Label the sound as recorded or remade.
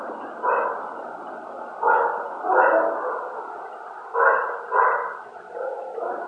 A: recorded